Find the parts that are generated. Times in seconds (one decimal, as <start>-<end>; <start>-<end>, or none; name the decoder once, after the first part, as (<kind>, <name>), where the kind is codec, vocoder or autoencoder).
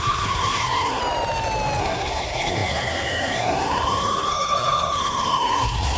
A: 0.0-1.0 (codec, SNAC); 1.8-6.0